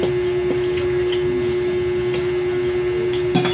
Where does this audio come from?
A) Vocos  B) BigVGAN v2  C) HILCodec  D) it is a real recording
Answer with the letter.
D